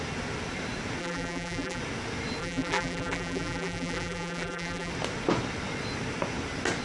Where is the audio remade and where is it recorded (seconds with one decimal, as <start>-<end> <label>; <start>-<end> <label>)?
0.0-1.0 recorded; 1.0-1.8 remade; 1.8-2.4 recorded; 2.4-4.9 remade; 4.9-6.8 recorded